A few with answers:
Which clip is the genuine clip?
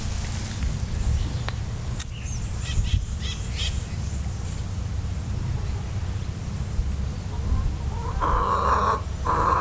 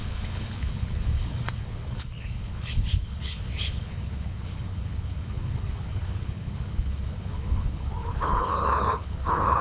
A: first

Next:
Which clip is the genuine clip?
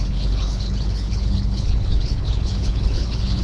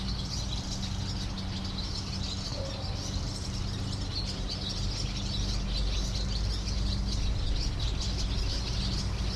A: second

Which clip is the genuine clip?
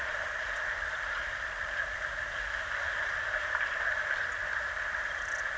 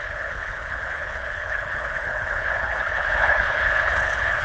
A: first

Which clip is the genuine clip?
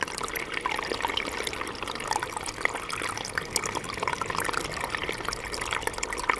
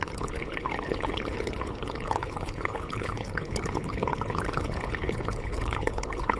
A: first